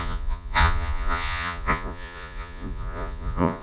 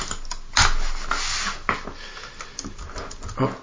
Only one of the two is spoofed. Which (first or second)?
first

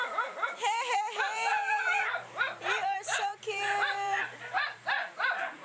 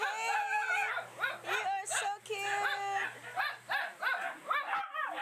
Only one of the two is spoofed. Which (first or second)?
first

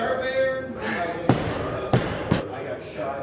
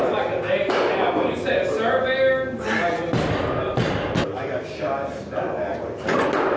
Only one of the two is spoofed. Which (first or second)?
first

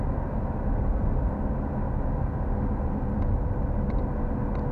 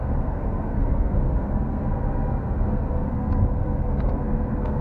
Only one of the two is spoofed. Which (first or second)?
second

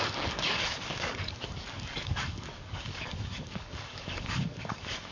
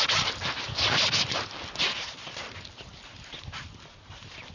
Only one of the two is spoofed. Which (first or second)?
first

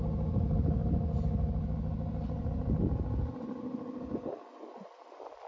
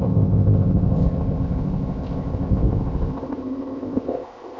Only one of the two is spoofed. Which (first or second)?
second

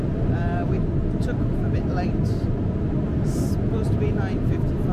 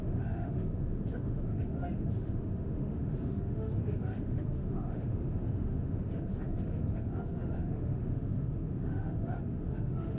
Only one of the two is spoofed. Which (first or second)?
second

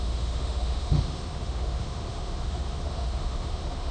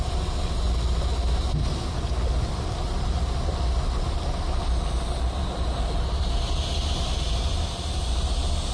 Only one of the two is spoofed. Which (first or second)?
first